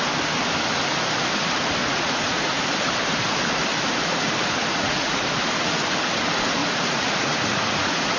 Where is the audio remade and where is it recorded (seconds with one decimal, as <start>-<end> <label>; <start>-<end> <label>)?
0.0-1.8 recorded; 1.8-2.6 remade; 2.6-4.6 recorded; 4.6-5.2 remade; 5.2-6.6 recorded; 6.6-8.2 remade